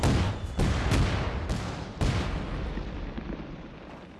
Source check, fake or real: real